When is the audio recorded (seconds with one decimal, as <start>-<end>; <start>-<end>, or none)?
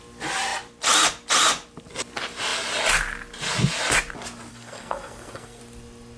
0.0-4.5; 5.6-6.2